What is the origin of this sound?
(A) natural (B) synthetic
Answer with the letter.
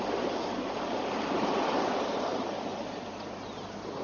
A